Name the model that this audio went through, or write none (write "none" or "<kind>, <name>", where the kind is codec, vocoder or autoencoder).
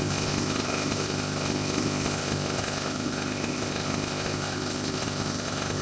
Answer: codec, ZipCodec